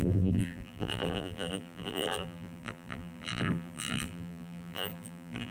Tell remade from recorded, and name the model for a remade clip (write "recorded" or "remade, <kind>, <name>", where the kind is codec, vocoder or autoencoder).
remade, vocoder, BigVGAN v2